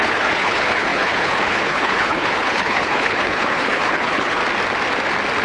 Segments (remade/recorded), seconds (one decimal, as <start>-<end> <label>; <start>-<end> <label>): 0.0-4.4 remade; 4.4-5.4 recorded